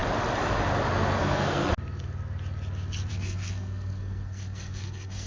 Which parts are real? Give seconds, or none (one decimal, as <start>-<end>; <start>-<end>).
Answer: 0.0-0.9; 1.7-3.1